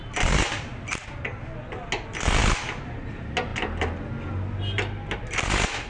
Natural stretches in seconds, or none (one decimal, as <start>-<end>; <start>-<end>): 0.0-5.9